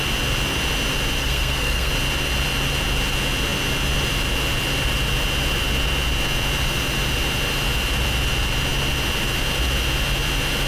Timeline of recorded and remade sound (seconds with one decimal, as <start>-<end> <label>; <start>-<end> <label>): 0.0-1.2 recorded; 1.2-1.9 remade; 1.9-10.7 recorded